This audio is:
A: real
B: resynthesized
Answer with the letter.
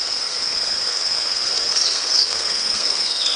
B